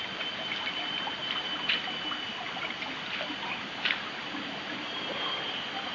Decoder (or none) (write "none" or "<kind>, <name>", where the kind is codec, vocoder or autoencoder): none